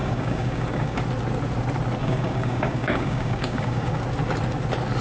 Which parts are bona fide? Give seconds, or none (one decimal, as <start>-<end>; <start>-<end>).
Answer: 1.0-2.0; 4.0-5.0